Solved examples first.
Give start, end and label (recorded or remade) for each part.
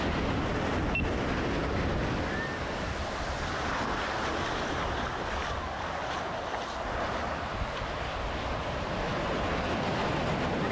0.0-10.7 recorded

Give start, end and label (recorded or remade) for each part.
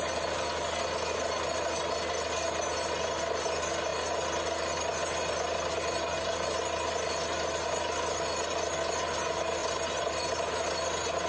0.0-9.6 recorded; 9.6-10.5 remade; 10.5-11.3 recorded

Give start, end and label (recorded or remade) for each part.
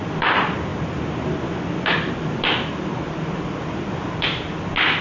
0.0-5.0 recorded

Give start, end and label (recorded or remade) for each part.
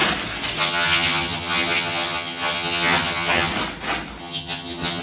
0.0-0.6 recorded; 0.6-3.5 remade; 3.5-4.2 recorded; 4.2-5.0 remade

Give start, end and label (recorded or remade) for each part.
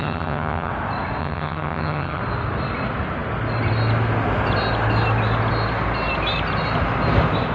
0.0-0.7 remade; 0.7-1.2 recorded; 1.2-2.2 remade; 2.2-7.5 recorded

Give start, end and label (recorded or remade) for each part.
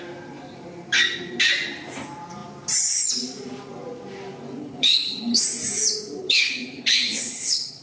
0.0-4.6 recorded; 4.6-5.4 remade; 5.4-6.2 recorded; 6.2-7.8 remade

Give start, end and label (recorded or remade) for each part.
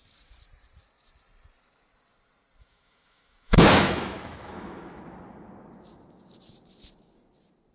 0.0-2.6 recorded; 2.6-5.0 remade; 5.0-7.7 recorded